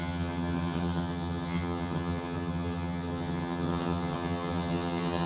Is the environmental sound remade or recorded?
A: remade